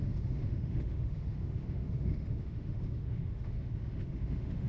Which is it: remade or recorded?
remade